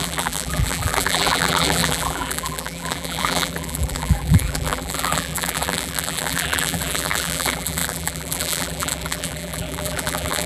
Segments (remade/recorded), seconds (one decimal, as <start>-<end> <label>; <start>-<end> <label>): 0.0-10.5 remade